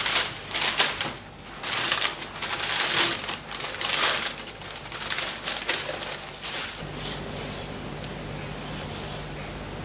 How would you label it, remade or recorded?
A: recorded